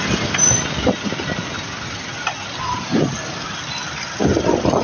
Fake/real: real